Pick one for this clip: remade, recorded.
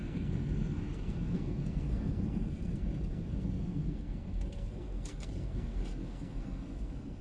remade